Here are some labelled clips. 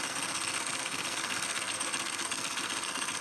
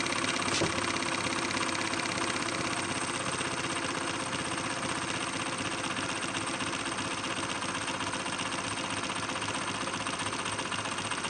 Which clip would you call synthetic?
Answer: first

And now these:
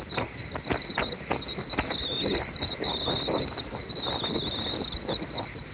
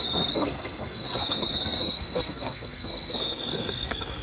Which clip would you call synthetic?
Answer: second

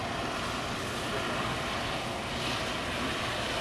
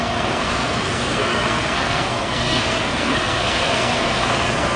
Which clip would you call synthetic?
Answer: second